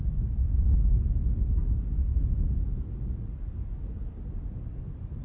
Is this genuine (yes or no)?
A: yes